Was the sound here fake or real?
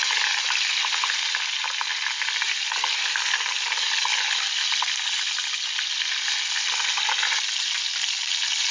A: real